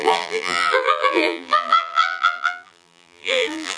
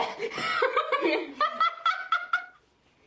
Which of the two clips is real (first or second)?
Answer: second